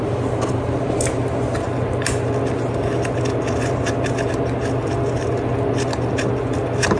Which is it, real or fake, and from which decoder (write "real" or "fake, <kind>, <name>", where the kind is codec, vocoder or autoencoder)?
real